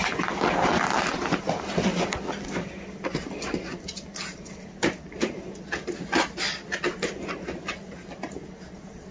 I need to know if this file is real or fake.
real